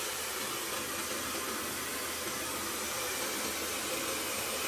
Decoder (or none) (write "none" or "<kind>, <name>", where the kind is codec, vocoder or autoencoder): none